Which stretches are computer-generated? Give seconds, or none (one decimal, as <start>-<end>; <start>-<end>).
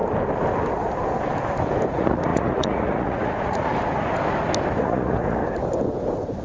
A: 1.9-3.7; 4.8-5.4